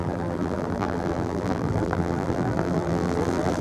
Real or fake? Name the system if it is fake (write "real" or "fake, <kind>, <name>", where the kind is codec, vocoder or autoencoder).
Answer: fake, vocoder, BigVGAN v2